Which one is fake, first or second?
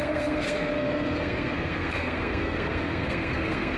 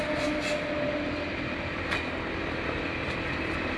first